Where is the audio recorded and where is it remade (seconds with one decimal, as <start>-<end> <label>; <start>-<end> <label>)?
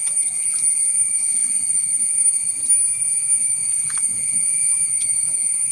0.0-3.6 recorded; 3.6-4.8 remade; 4.8-5.7 recorded